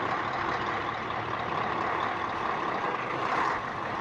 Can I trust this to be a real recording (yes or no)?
yes